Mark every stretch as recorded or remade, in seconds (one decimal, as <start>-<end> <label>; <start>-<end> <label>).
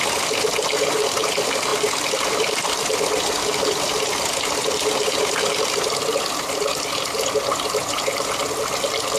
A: 0.0-9.2 recorded